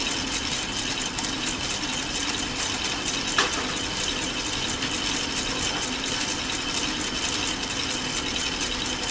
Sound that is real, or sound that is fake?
real